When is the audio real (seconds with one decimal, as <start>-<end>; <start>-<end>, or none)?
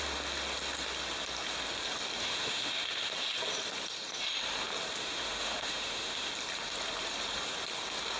0.0-2.2; 3.1-5.0; 6.3-8.2